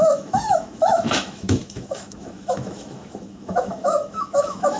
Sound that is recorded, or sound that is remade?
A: remade